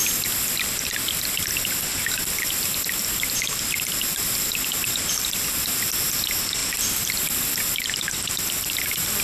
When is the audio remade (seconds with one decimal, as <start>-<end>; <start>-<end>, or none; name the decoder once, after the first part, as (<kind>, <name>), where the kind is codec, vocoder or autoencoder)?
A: none